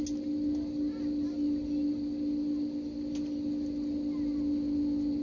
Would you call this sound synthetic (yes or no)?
no